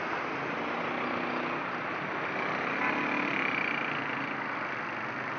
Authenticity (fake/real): real